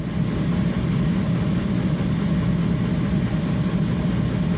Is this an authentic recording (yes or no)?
yes